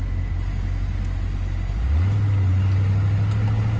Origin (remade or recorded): recorded